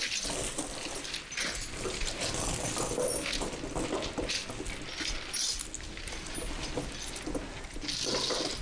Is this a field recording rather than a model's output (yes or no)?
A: yes